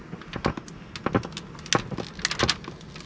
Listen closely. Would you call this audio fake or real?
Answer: real